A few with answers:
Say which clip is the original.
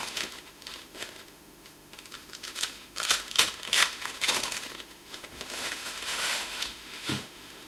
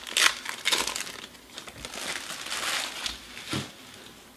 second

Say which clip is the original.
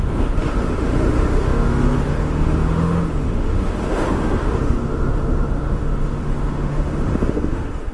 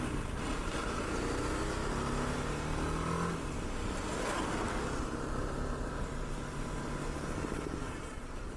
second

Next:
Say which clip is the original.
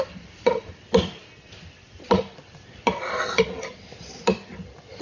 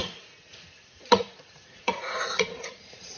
first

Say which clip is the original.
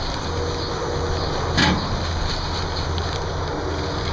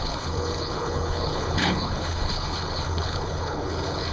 first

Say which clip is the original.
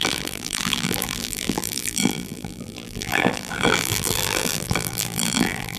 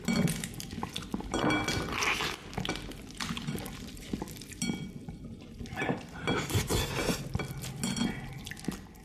second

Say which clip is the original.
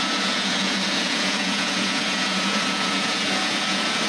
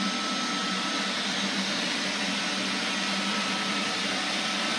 second